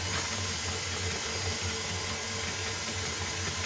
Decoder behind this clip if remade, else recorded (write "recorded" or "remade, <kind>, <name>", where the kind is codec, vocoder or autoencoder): recorded